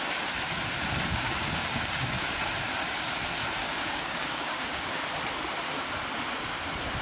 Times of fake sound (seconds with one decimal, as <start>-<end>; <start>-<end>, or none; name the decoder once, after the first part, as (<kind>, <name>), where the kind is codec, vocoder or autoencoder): 1.1-2.5 (codec, DAC); 3.6-5.0